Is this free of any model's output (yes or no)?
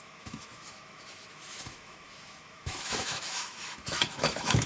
no